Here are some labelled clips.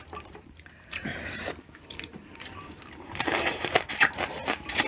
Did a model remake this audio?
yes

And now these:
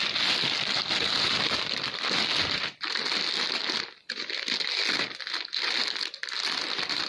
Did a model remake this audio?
no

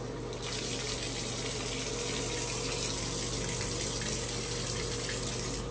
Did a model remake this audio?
no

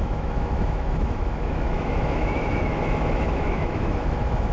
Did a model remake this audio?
yes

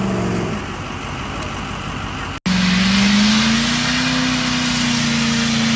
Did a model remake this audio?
no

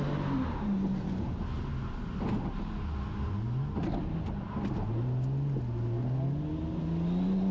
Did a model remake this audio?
no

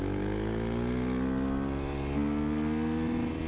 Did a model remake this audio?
no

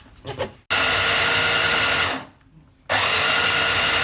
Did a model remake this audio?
no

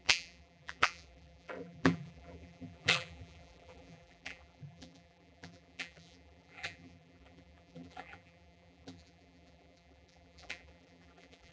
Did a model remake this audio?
yes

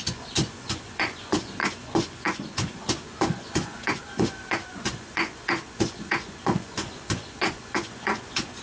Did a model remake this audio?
yes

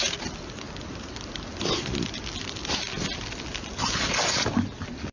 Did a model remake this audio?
no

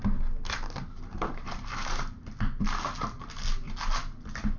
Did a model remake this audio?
no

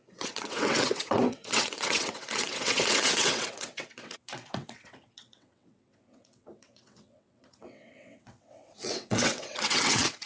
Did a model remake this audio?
yes